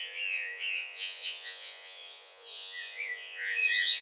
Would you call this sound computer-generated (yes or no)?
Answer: yes